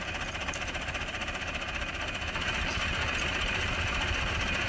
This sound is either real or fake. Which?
real